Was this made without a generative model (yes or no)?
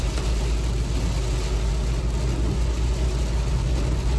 yes